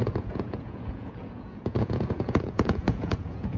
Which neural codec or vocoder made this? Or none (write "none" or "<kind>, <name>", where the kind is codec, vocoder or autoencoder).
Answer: vocoder, Vocos